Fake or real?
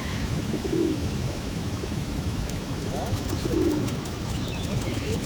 fake